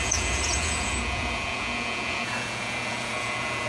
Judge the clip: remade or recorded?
remade